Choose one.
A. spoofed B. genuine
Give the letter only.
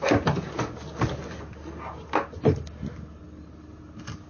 B